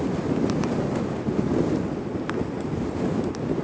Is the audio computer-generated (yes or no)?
no